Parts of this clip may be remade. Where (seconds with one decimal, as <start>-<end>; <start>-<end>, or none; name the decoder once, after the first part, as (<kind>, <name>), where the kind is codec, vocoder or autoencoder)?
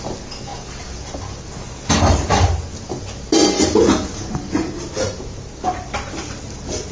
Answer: none